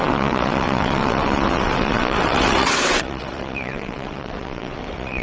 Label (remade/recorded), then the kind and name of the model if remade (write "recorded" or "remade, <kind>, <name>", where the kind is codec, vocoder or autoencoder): remade, vocoder, WaveNeXt